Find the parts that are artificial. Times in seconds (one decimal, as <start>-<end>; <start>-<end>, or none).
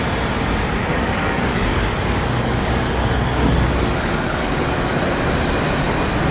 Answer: 0.9-4.7